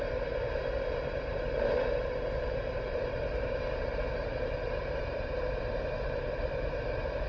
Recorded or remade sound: remade